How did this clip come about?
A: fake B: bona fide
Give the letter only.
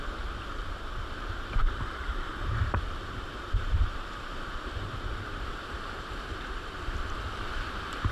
A